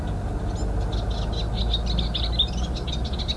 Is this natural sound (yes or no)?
yes